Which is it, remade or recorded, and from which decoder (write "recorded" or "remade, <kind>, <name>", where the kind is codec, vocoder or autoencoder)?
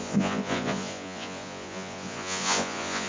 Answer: remade, vocoder, Vocos